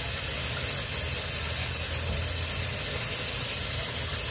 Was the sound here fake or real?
real